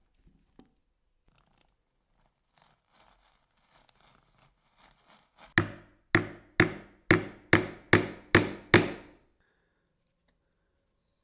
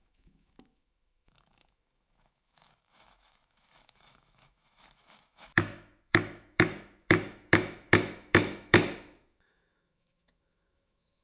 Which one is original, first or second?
first